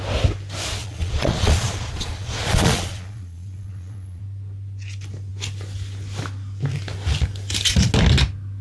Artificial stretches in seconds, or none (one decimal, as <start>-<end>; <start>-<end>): 0.8-4.2